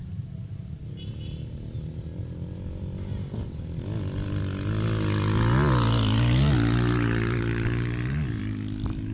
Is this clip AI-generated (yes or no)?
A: no